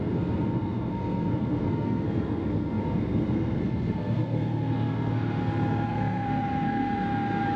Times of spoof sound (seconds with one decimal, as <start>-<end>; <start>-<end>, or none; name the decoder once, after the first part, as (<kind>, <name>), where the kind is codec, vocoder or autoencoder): 0.0-7.6 (codec, SNAC)